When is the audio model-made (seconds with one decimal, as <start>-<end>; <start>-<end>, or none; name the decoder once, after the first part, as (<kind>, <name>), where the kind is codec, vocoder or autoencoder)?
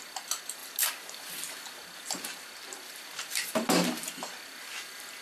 none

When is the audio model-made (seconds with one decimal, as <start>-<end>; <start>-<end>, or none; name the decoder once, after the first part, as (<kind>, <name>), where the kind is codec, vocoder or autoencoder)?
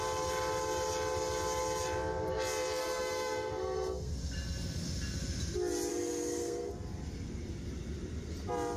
2.8-4.1 (codec, SNAC); 5.9-6.7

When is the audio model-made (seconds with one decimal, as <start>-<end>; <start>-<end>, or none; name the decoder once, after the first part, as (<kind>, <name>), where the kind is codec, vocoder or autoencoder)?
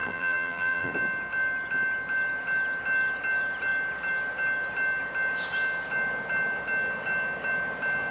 0.0-0.9 (vocoder, BigVGAN v2)